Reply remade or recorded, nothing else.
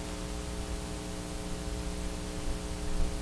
recorded